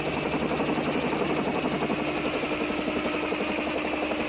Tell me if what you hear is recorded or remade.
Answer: recorded